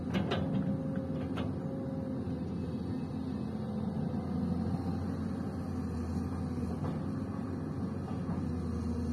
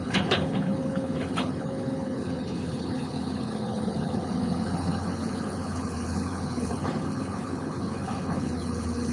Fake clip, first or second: second